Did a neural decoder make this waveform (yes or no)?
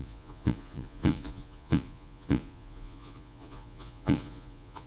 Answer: yes